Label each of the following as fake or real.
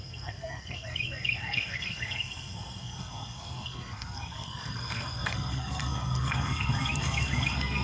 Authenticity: fake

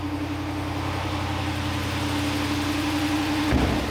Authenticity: real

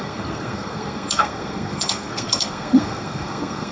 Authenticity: fake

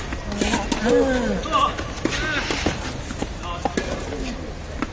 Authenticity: real